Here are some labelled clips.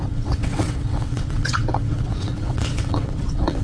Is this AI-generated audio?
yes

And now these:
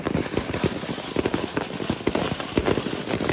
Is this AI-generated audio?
no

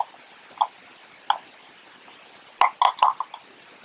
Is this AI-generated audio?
no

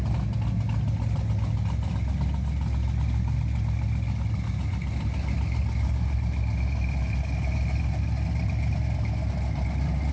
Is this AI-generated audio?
no